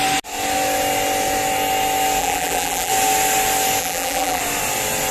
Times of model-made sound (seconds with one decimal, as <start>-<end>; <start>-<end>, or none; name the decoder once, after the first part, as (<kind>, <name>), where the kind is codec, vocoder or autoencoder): 2.2-2.9 (vocoder, BigVGAN v2); 3.8-4.4